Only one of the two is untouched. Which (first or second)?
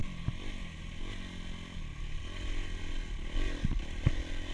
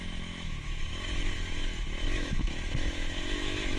first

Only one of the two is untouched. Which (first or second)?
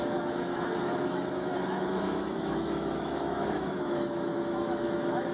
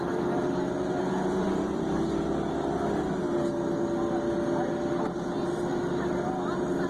second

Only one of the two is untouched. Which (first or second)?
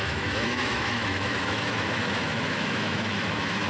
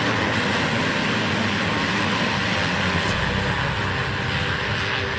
second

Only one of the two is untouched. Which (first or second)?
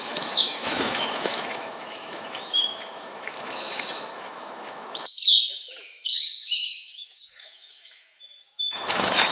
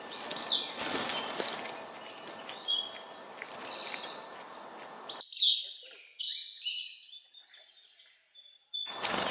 second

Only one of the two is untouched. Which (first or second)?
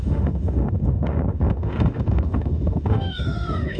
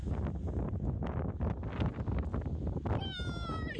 second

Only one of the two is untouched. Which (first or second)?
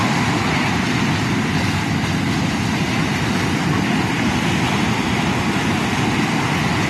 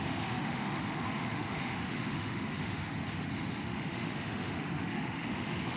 first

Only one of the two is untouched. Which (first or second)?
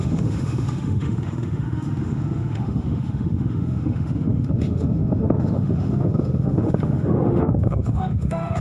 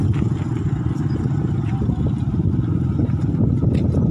second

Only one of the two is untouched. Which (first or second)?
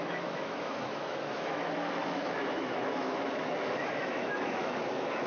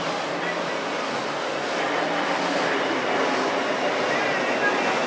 second